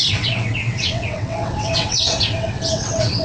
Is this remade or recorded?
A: remade